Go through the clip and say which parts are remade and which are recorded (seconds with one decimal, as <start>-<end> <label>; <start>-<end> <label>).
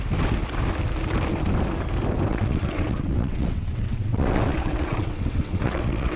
0.0-2.3 recorded; 2.3-6.2 remade